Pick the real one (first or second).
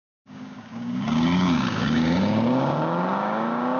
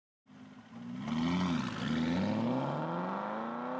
second